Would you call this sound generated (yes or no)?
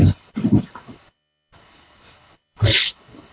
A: yes